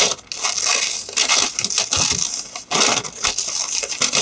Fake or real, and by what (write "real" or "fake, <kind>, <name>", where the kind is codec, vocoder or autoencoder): real